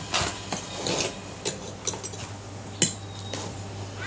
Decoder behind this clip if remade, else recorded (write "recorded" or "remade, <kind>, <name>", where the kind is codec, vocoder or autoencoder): recorded